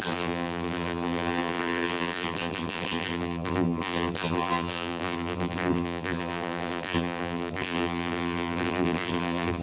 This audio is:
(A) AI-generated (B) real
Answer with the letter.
A